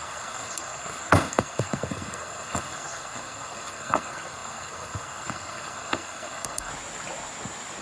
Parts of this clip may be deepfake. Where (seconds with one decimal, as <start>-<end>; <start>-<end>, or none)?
0.0-6.7